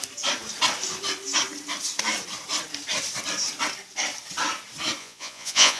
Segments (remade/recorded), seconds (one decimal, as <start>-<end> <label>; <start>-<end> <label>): 0.0-5.0 recorded; 5.0-5.8 remade